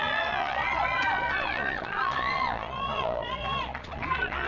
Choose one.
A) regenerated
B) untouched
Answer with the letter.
A